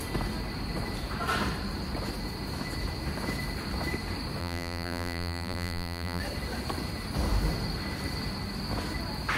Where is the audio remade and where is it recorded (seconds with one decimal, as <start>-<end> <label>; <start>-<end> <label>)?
0.0-4.4 recorded; 4.4-6.2 remade; 6.2-9.4 recorded